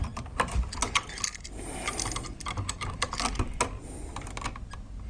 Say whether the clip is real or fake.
real